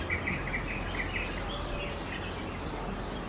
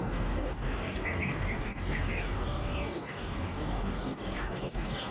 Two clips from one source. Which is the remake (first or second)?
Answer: second